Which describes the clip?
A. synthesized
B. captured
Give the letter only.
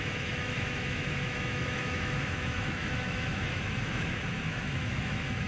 A